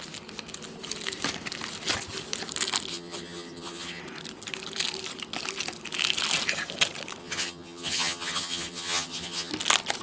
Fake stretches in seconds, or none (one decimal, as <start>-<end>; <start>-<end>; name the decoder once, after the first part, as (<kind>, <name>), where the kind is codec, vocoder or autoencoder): 2.9-4.0 (vocoder, HiFi-GAN); 7.2-9.5